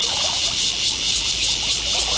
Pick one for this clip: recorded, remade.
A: recorded